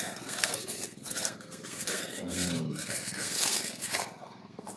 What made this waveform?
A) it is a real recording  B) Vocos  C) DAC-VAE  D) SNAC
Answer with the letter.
D